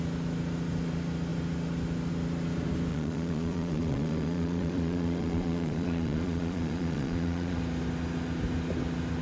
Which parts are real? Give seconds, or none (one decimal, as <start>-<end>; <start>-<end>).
0.0-2.9; 7.6-9.2